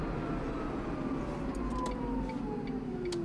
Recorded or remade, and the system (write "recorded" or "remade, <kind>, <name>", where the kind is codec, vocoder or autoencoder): recorded